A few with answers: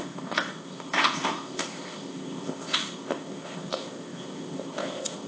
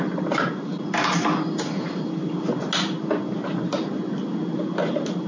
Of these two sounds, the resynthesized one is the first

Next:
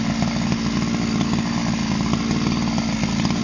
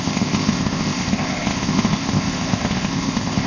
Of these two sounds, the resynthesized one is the second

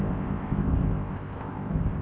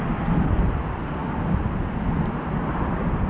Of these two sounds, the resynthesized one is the first